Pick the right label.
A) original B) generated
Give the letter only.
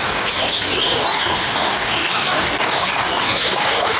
B